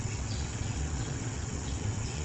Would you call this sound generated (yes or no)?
yes